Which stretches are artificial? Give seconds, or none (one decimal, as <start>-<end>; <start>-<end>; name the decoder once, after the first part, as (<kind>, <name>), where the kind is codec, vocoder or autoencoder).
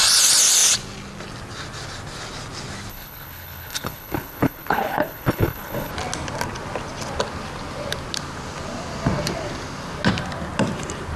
2.9-5.9 (codec, HILCodec)